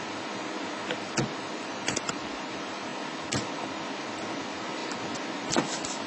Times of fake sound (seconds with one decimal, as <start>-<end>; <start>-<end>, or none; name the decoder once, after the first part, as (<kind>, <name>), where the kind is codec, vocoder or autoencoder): 1.5-2.4 (vocoder, Vocos)